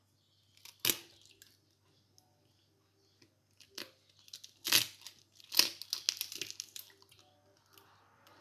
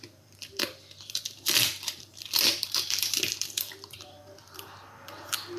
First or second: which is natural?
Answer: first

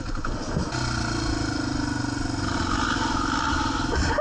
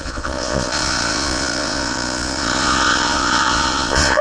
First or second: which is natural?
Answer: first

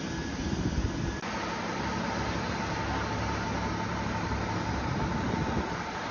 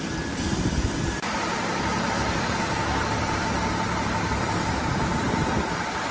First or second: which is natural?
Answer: first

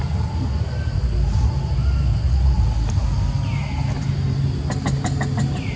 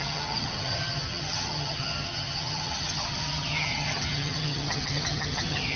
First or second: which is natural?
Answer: first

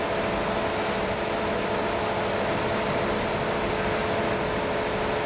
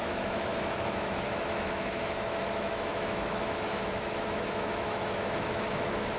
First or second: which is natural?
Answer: first